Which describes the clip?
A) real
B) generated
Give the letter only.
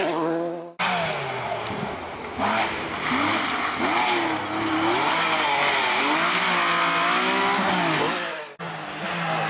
A